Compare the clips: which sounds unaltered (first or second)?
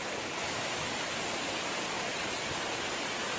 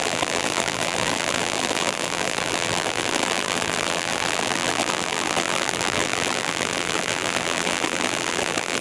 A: first